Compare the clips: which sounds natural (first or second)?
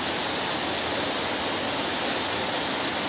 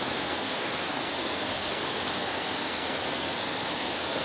first